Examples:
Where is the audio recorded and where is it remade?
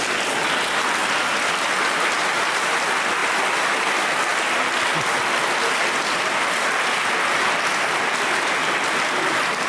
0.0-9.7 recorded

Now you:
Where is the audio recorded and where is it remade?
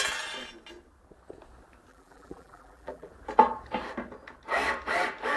0.0-1.9 recorded; 1.9-3.1 remade; 3.1-5.4 recorded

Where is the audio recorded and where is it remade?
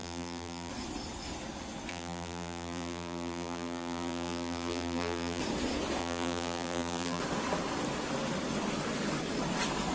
0.0-0.7 remade; 0.7-1.9 recorded; 1.9-5.4 remade; 5.4-6.0 recorded; 6.0-7.2 remade; 7.2-9.9 recorded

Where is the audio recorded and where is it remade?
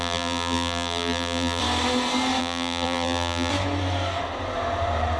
0.0-1.6 remade; 1.6-2.4 recorded; 2.4-3.5 remade; 3.5-5.2 recorded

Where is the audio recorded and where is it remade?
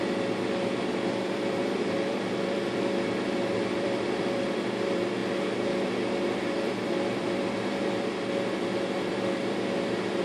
0.0-5.2 remade; 5.2-6.3 recorded; 6.3-10.2 remade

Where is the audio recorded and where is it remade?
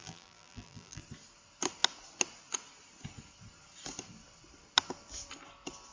0.0-1.0 remade; 1.0-5.9 recorded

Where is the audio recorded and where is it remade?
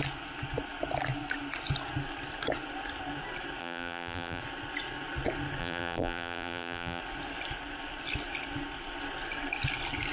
0.0-3.6 recorded; 3.6-4.4 remade; 4.4-5.6 recorded; 5.6-7.0 remade; 7.0-10.1 recorded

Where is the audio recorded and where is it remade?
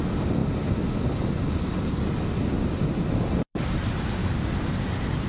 0.0-2.9 recorded; 2.9-3.8 remade; 3.8-5.3 recorded